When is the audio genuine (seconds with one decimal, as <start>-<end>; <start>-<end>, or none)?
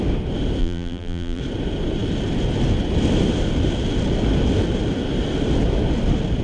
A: 0.0-0.6; 1.4-6.4